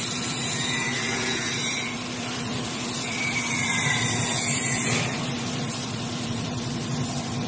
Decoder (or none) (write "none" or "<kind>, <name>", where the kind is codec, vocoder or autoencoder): vocoder, BigVGAN v2